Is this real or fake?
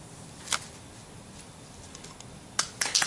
real